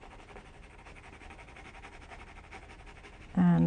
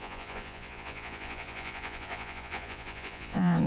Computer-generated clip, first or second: second